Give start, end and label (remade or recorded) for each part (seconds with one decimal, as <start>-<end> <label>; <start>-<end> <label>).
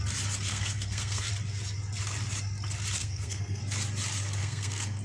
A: 0.0-0.5 recorded; 0.5-1.3 remade; 1.3-3.0 recorded; 3.0-3.6 remade; 3.6-4.4 recorded; 4.4-5.0 remade